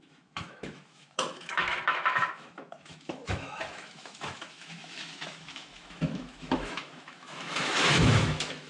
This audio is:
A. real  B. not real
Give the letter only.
B